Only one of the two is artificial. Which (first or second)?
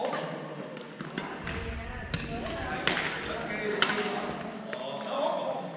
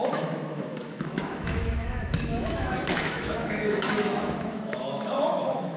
second